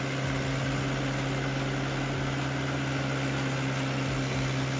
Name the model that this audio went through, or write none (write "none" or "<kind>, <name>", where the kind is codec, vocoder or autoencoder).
none